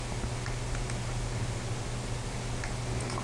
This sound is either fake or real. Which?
real